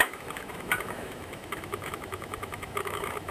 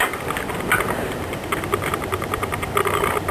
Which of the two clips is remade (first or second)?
first